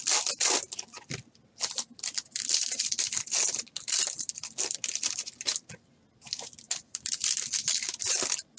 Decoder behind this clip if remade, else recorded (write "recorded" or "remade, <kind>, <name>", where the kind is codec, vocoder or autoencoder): recorded